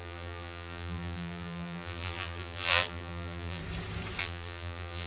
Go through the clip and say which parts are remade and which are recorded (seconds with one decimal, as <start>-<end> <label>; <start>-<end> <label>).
0.0-3.6 remade; 3.6-4.2 recorded; 4.2-5.1 remade